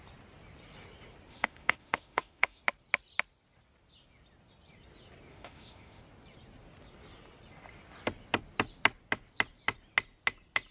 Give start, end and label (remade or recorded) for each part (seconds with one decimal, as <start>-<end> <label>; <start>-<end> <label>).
0.0-1.3 recorded; 1.3-2.6 remade; 2.6-5.3 recorded; 5.3-6.0 remade; 6.0-10.7 recorded